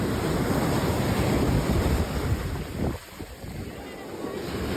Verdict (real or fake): real